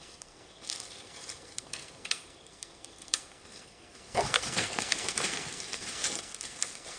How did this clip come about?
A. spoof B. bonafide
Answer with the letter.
A